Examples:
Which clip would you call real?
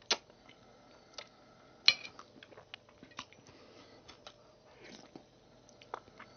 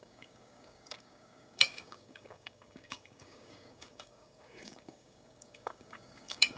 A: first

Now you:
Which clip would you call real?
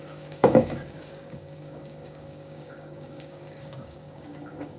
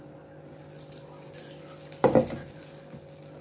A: second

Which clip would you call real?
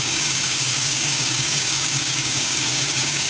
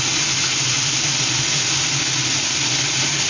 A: second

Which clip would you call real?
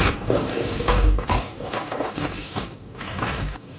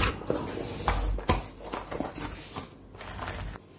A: second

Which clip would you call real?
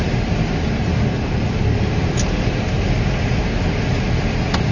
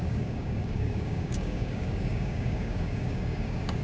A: first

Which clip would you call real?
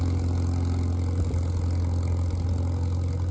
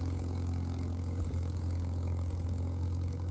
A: first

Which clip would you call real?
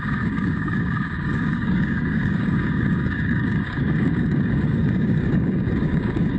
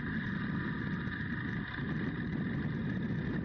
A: second